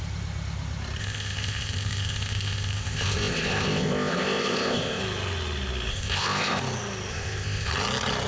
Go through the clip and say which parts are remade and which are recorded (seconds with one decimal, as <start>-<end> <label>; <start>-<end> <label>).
0.0-1.0 recorded; 1.0-5.0 remade; 5.0-5.9 recorded; 5.9-6.6 remade; 6.6-7.1 recorded; 7.1-7.7 remade; 7.7-8.3 recorded